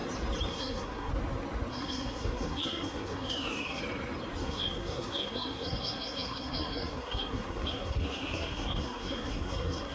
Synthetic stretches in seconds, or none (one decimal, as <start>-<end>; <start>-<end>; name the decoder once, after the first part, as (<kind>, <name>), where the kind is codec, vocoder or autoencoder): 0.5-1.1 (codec, SNAC); 1.7-3.8; 4.4-9.9